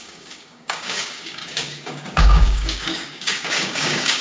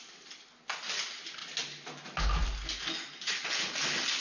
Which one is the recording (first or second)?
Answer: second